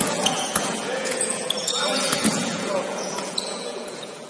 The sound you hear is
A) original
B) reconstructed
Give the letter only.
B